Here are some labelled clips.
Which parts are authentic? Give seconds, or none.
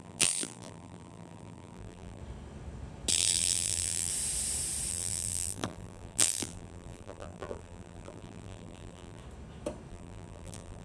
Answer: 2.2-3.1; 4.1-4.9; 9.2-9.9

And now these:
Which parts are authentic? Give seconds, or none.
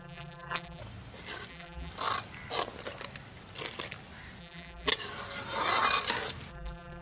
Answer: 0.8-1.5; 1.9-4.4; 4.9-6.5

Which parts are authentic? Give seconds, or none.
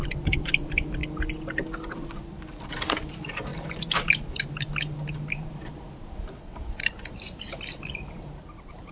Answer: 1.0-2.7; 3.5-5.3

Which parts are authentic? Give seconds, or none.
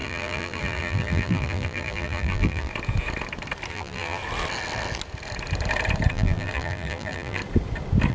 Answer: 2.7-3.7; 4.2-6.1; 7.4-8.1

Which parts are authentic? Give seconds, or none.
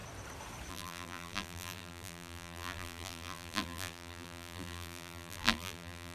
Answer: 0.0-0.7